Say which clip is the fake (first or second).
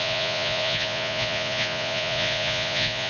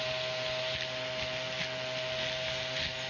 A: first